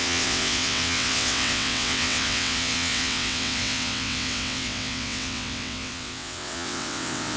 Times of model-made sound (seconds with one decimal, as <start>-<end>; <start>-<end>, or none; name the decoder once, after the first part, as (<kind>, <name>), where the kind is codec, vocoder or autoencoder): 0.0-7.4 (vocoder, WaveNeXt)